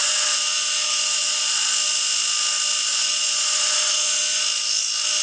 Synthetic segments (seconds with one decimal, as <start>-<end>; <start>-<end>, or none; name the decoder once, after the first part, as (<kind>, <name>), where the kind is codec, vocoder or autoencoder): 0.0-1.4 (vocoder, Vocos); 2.9-4.4